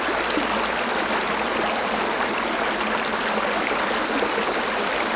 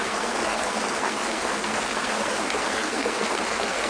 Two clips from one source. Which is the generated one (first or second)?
second